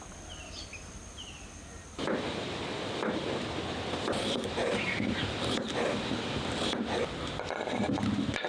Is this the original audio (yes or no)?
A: yes